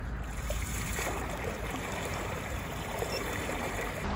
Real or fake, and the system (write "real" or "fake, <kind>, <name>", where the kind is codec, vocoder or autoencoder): fake, vocoder, BigVGAN v2